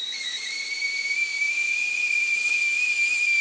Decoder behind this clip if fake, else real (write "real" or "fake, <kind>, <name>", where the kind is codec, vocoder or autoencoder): fake, vocoder, BigVGAN v2